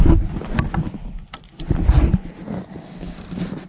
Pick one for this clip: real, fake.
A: real